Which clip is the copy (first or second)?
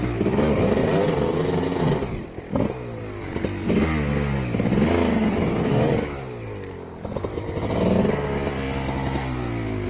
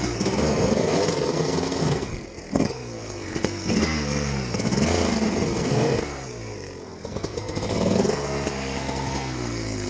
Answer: second